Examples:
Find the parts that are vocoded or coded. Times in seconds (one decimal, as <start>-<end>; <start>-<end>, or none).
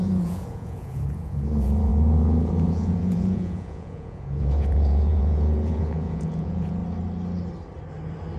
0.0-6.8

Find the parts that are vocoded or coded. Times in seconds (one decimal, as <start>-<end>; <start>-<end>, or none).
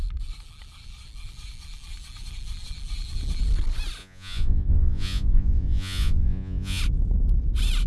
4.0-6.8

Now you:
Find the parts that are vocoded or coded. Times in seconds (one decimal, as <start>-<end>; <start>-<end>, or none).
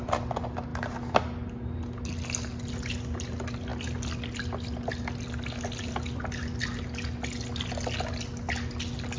none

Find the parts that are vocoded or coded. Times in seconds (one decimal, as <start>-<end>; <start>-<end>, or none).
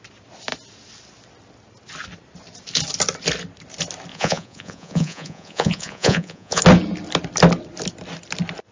4.1-6.6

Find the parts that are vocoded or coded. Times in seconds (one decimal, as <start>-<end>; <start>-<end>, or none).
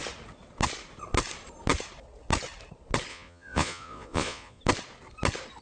3.1-4.6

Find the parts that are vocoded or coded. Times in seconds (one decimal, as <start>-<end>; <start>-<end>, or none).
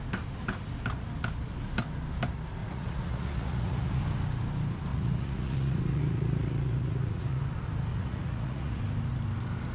2.6-4.0; 4.9-7.4; 7.9-8.8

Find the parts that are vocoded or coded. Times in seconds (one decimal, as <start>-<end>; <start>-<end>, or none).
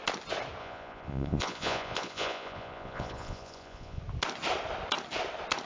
0.6-4.0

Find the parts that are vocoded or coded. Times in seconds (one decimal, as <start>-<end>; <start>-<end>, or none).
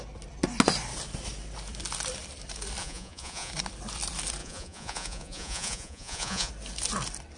2.8-3.5; 4.4-6.5